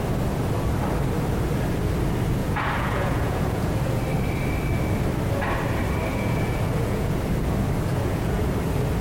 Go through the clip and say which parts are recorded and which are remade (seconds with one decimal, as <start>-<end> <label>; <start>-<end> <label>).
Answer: 0.0-2.4 recorded; 2.4-4.0 remade; 4.0-6.1 recorded; 6.1-7.2 remade; 7.2-7.9 recorded; 7.9-8.4 remade; 8.4-9.0 recorded